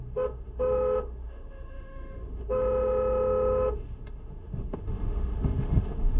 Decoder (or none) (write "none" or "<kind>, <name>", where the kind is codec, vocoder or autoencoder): autoencoder, DAC-VAE